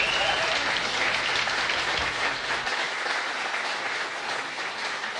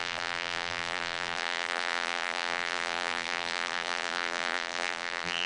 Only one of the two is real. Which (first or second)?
first